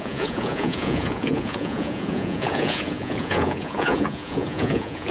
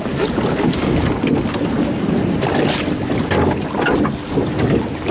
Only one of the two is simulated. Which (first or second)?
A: first